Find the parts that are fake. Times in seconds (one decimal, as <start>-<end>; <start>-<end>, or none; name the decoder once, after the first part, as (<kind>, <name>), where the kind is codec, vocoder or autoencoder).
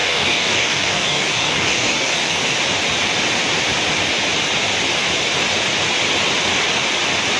0.0-2.6 (codec, DAC)